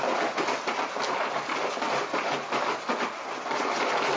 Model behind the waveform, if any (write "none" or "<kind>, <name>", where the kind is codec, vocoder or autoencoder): none